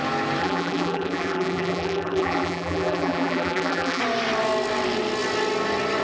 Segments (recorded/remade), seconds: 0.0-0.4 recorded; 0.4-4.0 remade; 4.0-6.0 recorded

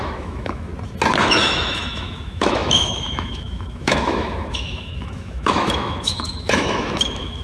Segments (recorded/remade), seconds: 0.0-0.7 remade; 0.7-1.2 recorded; 1.2-7.4 remade